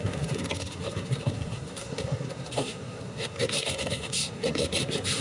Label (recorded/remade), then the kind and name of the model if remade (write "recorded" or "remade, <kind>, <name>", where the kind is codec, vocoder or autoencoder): remade, codec, SNAC